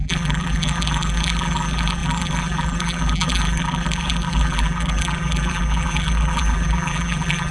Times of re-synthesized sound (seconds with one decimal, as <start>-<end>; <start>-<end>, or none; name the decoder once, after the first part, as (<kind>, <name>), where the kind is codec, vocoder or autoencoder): 0.0-7.5 (vocoder, BigVGAN v2)